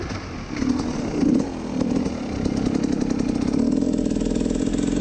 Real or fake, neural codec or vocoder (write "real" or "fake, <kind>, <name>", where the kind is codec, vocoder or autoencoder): real